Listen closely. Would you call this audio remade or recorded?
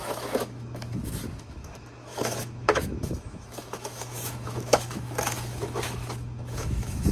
remade